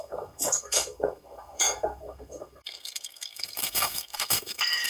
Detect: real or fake fake